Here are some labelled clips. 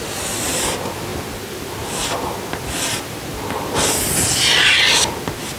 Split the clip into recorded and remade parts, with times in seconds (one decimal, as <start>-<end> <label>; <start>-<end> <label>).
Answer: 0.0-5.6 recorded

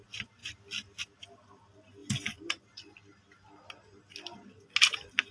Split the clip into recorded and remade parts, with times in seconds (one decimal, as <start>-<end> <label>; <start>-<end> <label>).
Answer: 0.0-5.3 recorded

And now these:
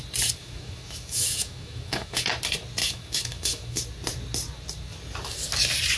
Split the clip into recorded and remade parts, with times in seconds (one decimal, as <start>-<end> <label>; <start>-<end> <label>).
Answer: 0.0-0.4 recorded; 0.4-2.3 remade; 2.3-2.8 recorded; 2.8-3.8 remade; 3.8-6.0 recorded